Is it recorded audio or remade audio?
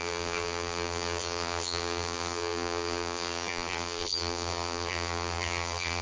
remade